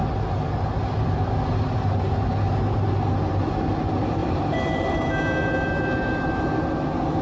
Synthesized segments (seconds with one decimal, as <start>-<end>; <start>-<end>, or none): 4.2-5.1

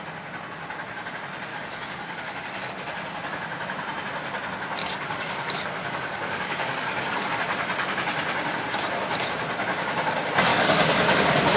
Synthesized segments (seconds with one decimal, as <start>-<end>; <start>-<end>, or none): 1.5-2.7; 4.8-7.3; 10.5-11.2

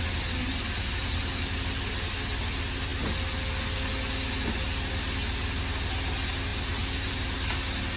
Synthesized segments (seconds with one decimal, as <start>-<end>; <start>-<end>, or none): none

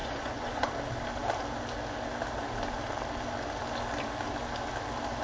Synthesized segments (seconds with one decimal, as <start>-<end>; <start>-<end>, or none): 0.0-0.7

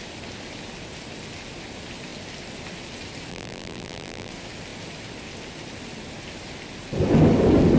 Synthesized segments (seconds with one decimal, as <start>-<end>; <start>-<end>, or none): 3.3-4.3